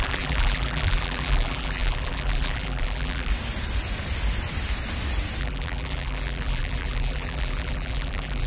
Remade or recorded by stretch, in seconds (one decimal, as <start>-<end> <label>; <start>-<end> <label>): 0.0-3.3 remade; 3.3-5.4 recorded; 5.4-8.5 remade